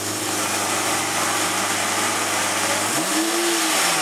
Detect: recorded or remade recorded